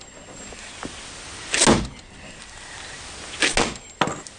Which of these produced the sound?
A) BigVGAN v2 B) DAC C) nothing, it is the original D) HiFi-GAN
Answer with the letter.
C